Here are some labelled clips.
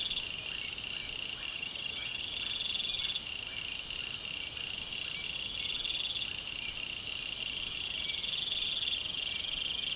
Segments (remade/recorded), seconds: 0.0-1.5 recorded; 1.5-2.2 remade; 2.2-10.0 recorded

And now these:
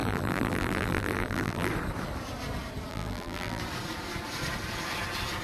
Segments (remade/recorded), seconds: 0.0-1.7 remade; 1.7-2.9 recorded; 2.9-3.6 remade; 3.6-5.4 recorded

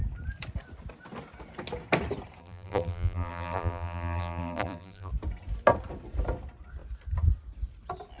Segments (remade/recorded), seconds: 0.0-2.4 recorded; 2.4-5.1 remade; 5.1-8.2 recorded